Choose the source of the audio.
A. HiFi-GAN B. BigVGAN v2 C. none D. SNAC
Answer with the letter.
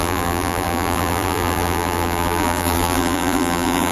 B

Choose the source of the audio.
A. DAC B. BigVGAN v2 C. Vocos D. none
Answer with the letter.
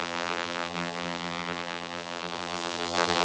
B